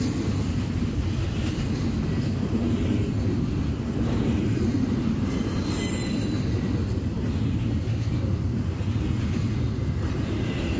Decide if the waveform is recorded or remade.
recorded